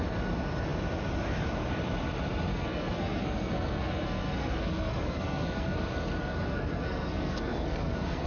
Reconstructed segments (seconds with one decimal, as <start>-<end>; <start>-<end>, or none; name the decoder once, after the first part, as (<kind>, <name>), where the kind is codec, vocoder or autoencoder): 2.5-5.8 (codec, SNAC); 6.2-8.3